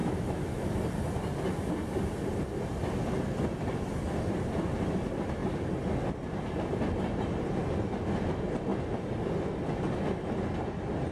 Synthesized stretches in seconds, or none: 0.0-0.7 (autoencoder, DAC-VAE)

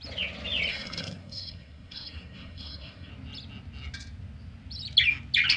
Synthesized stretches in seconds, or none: 0.7-3.1 (codec, SNAC)

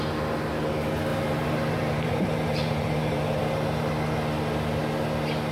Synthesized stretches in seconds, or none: 1.1-3.9 (vocoder, BigVGAN v2)